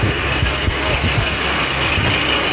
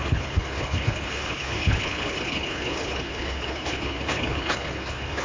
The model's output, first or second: second